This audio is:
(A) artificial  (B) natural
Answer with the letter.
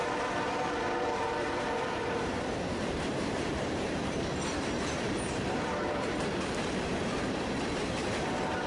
A